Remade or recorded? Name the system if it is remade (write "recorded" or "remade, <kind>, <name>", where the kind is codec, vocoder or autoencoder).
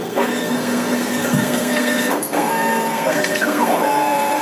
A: remade, codec, SNAC